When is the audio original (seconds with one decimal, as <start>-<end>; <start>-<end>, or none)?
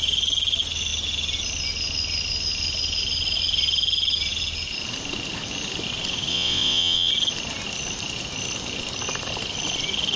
0.0-6.3; 7.1-10.2